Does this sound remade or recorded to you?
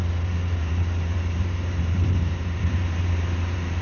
remade